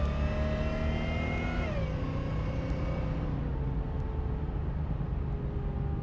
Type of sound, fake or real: real